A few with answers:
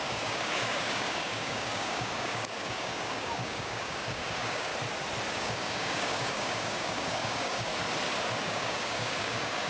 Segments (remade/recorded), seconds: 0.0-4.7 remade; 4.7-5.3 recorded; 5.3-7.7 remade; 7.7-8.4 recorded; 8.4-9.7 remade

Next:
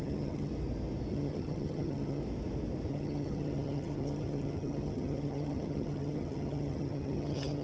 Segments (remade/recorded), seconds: 0.0-0.5 remade; 0.5-1.1 recorded; 1.1-2.2 remade; 2.2-2.9 recorded; 2.9-7.6 remade

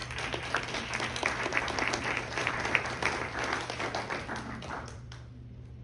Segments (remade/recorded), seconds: 0.0-0.7 remade; 0.7-1.5 recorded; 1.5-5.0 remade; 5.0-5.8 recorded

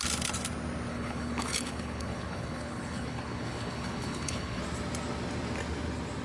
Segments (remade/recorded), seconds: 0.0-0.9 recorded; 0.9-4.6 remade; 4.6-6.2 recorded